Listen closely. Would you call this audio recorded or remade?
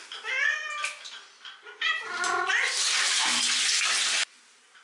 recorded